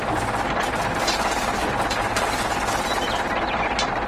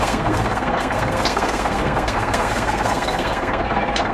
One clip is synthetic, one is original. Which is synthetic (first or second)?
second